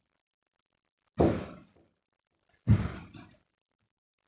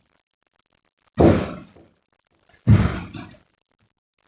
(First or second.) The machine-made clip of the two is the first